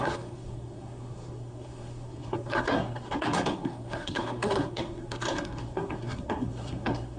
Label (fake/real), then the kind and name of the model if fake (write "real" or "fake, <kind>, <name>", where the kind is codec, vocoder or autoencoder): fake, codec, SNAC